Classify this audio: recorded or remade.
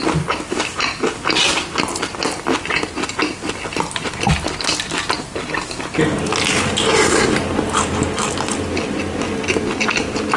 recorded